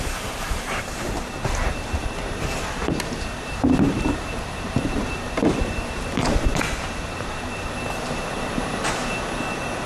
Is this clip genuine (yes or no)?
no